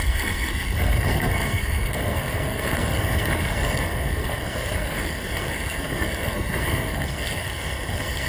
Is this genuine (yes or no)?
no